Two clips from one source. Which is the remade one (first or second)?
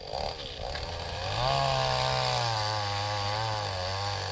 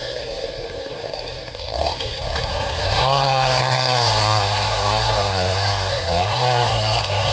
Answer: second